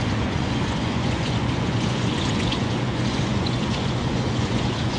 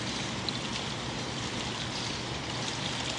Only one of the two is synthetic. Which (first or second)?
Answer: first